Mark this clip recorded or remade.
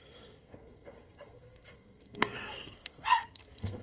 remade